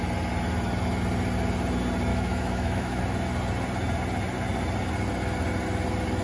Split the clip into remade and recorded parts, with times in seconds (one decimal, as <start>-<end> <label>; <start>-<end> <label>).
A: 0.0-2.1 recorded; 2.1-3.0 remade; 3.0-6.2 recorded